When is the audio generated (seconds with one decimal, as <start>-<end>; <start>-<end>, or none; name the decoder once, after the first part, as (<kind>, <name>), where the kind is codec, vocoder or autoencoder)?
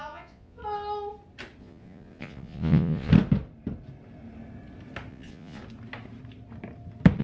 0.0-0.6 (vocoder, Vocos); 1.6-3.1; 5.1-5.6